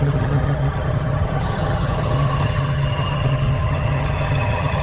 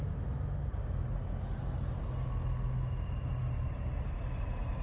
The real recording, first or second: second